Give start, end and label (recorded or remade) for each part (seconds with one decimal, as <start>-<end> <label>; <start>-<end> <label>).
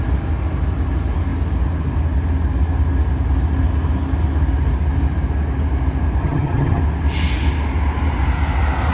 0.0-6.2 recorded; 6.2-6.8 remade; 6.8-8.9 recorded